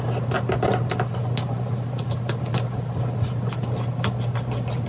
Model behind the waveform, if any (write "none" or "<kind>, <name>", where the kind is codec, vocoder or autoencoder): none